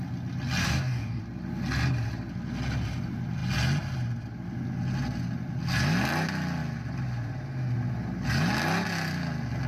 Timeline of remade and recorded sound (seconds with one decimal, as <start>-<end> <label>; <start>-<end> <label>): 0.0-0.6 recorded; 0.6-1.2 remade; 1.2-9.7 recorded